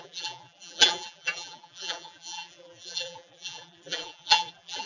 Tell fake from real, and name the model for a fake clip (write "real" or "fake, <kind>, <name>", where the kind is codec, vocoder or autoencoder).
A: fake, vocoder, BigVGAN v2